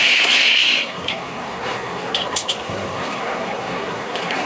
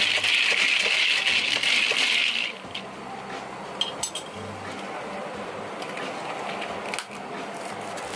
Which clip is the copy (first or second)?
first